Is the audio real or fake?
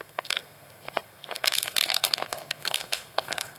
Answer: fake